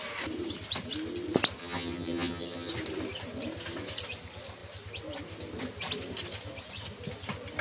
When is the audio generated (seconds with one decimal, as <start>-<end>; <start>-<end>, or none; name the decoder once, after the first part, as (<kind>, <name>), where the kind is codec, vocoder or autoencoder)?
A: 1.6-2.7 (vocoder, HiFi-GAN)